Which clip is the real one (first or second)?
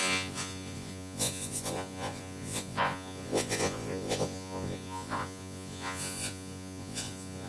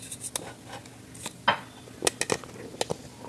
second